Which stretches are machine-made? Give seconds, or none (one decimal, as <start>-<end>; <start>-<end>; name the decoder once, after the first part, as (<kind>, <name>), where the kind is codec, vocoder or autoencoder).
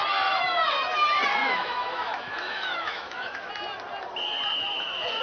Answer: 1.4-3.5 (autoencoder, DAC-VAE); 4.5-5.2